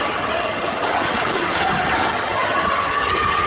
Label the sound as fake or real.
fake